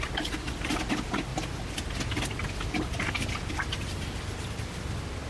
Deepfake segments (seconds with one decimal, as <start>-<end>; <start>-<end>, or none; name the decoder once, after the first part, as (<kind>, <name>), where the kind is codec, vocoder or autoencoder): none